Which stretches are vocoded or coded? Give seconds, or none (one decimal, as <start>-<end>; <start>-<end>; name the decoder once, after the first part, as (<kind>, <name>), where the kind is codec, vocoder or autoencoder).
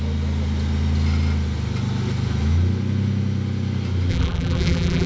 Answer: 4.1-5.1 (vocoder, BigVGAN v2)